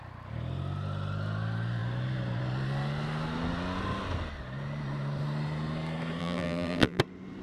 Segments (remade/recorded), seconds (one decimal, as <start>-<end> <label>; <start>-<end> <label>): 0.0-6.2 recorded; 6.2-7.0 remade; 7.0-7.4 recorded